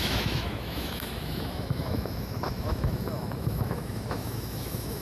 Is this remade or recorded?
remade